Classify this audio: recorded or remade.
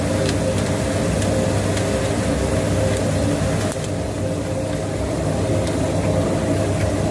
recorded